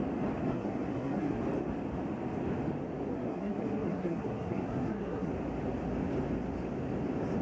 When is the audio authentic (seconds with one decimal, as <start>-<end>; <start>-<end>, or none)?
0.0-0.4; 1.4-3.1; 5.3-7.4